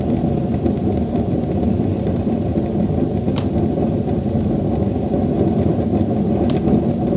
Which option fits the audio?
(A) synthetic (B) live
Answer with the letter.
B